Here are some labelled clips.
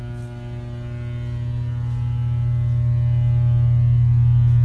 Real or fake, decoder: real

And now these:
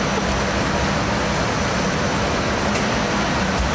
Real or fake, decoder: real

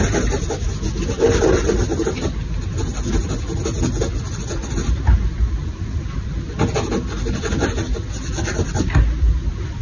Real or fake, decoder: real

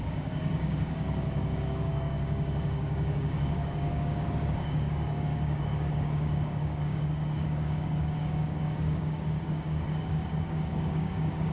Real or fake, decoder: fake, codec, DAC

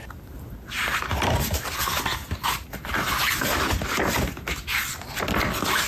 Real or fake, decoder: real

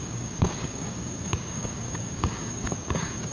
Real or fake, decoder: fake, codec, DAC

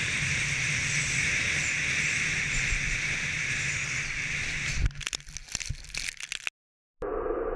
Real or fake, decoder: real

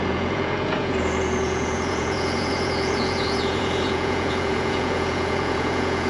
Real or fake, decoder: fake, vocoder, Vocos